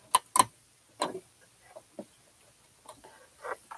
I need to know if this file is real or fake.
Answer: real